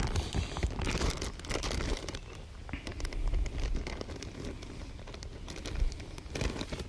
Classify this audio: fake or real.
real